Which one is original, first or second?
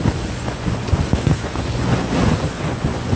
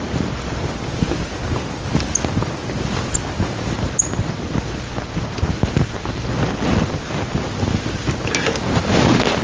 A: second